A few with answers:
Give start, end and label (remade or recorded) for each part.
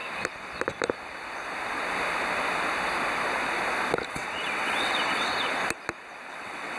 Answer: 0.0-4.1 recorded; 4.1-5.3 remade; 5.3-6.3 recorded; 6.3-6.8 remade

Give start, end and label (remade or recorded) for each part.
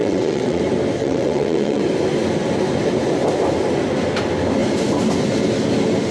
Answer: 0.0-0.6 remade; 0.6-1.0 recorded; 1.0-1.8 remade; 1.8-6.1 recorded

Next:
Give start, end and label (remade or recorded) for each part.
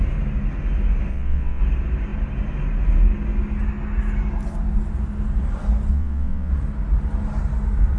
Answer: 0.0-1.1 recorded; 1.1-1.6 remade; 1.6-5.9 recorded; 5.9-6.5 remade; 6.5-8.0 recorded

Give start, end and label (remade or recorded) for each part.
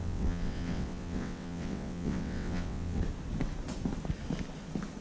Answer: 0.0-3.0 remade; 3.0-5.0 recorded